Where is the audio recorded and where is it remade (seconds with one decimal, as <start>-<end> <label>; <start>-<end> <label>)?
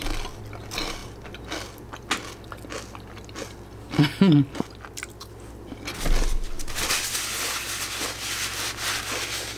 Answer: 0.0-9.6 recorded